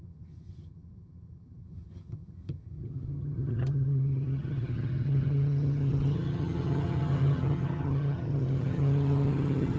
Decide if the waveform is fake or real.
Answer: fake